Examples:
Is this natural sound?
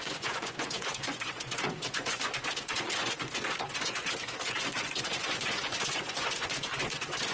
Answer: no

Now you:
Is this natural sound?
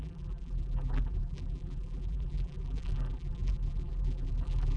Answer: no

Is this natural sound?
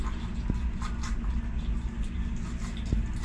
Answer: yes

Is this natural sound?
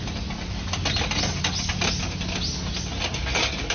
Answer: yes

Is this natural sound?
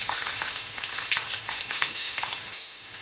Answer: no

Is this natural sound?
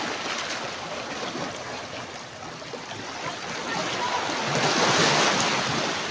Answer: yes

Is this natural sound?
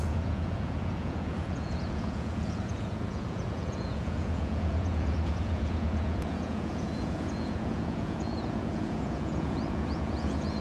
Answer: no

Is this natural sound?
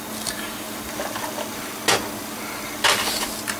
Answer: yes